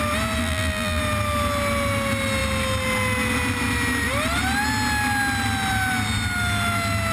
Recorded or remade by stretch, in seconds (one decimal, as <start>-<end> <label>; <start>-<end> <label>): 0.0-0.4 recorded; 0.4-1.0 remade; 1.0-7.1 recorded